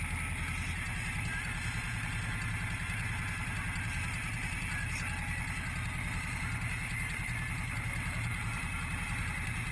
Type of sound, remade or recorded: recorded